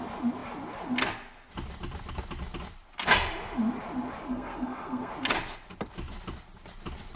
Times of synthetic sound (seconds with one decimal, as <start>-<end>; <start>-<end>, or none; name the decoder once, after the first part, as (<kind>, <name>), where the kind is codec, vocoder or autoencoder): 4.2-5.1 (codec, SNAC)